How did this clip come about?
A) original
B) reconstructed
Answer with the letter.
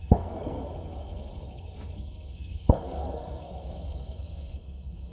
B